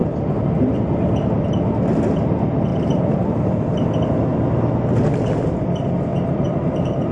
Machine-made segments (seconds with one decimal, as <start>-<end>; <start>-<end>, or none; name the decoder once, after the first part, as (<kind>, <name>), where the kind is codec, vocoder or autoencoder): 0.0-0.8 (vocoder, BigVGAN v2); 2.7-3.3; 6.1-7.1

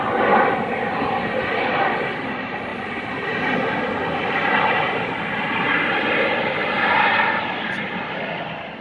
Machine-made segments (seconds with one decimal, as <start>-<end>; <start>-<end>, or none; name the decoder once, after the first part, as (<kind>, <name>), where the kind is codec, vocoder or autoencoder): none

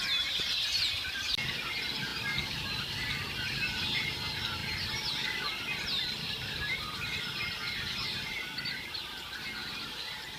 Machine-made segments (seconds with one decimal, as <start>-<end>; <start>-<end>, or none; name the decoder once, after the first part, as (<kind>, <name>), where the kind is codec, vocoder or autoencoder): none

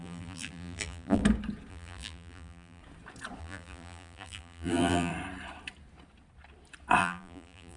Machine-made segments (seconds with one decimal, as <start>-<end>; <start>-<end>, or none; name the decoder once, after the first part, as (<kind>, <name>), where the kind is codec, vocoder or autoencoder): 0.0-1.2 (vocoder, BigVGAN v2); 1.7-2.8; 3.4-5.1; 7.0-7.8

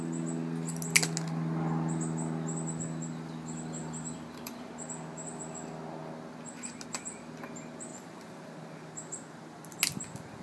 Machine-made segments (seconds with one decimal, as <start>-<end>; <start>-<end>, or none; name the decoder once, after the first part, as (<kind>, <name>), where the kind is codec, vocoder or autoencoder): 3.8-4.7 (vocoder, BigVGAN v2); 7.9-8.5

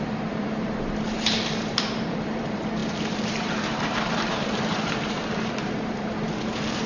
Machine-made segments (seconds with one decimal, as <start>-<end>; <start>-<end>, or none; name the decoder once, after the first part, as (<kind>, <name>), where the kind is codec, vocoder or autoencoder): 0.0-6.9 (vocoder, BigVGAN v2)

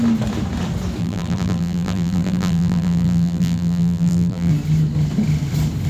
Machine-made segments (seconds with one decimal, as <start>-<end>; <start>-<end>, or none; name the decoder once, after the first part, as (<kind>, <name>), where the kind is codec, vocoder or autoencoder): 1.0-4.5 (vocoder, BigVGAN v2)